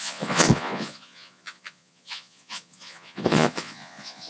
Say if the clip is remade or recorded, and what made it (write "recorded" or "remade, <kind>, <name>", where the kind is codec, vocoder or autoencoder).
remade, vocoder, Vocos